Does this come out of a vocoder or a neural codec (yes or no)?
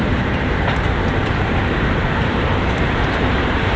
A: yes